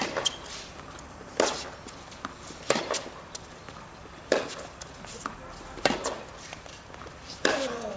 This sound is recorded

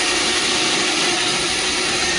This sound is recorded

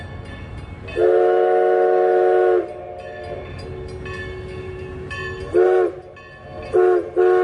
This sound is recorded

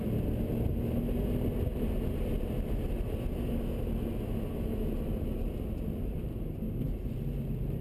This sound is recorded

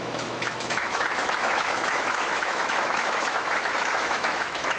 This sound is remade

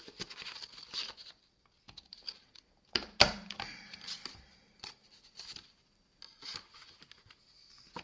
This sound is recorded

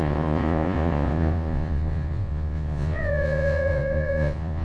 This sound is remade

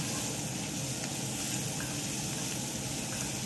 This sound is recorded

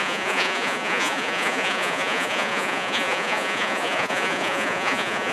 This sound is remade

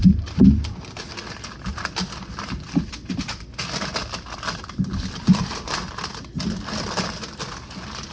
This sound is recorded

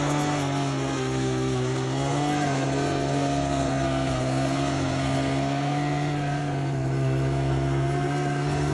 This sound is remade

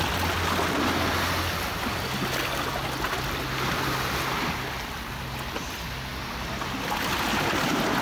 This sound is recorded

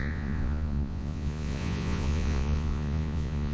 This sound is remade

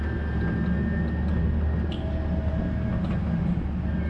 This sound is recorded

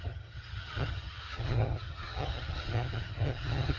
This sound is remade